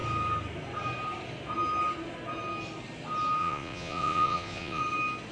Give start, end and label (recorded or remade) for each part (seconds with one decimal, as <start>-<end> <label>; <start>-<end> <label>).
0.0-3.4 recorded; 3.4-4.8 remade; 4.8-5.3 recorded